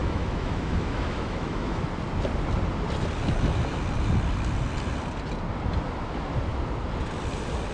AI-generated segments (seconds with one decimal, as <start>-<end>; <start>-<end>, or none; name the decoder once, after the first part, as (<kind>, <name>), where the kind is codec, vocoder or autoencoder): 0.0-1.8 (autoencoder, DAC-VAE)